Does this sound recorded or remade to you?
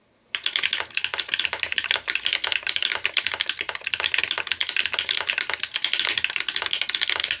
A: recorded